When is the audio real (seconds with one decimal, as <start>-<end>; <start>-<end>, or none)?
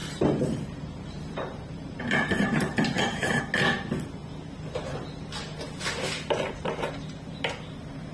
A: 3.4-8.1